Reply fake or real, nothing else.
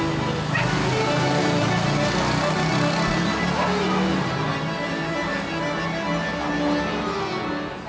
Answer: real